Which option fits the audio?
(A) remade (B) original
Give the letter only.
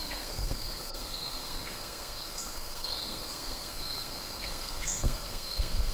A